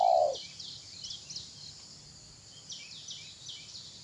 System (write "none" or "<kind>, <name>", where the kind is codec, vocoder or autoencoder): none